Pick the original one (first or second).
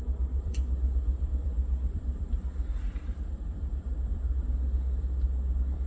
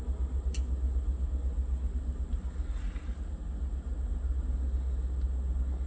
second